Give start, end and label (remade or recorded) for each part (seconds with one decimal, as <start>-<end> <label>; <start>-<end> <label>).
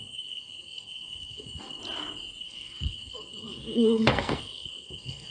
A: 0.0-1.8 remade; 1.8-2.4 recorded; 2.4-5.3 remade